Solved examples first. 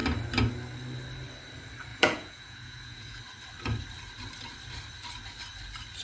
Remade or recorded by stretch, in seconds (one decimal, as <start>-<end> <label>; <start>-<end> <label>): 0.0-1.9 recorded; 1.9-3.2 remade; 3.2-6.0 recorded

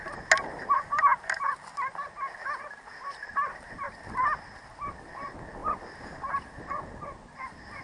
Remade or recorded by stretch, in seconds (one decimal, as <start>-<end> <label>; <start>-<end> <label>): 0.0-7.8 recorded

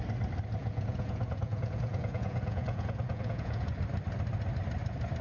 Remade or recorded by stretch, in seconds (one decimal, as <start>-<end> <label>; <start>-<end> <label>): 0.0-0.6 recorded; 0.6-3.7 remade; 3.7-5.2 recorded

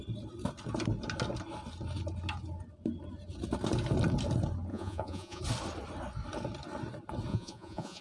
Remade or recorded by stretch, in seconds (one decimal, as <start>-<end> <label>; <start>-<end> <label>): 0.0-4.7 recorded; 4.7-5.4 remade; 5.4-7.3 recorded; 7.3-8.0 remade

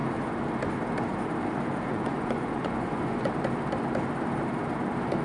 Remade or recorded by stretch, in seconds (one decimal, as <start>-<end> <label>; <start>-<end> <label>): 0.0-1.9 recorded; 1.9-3.3 remade; 3.3-5.2 recorded

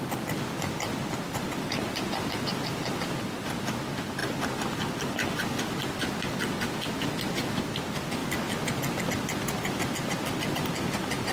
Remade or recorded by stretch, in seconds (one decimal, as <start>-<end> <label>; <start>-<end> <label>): 0.0-11.3 recorded